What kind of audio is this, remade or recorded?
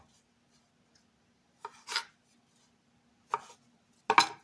recorded